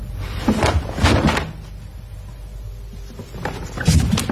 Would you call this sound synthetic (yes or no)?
no